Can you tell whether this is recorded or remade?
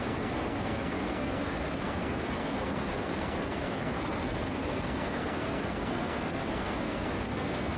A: remade